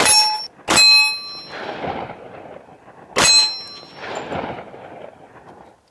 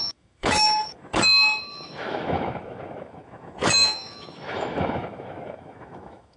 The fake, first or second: second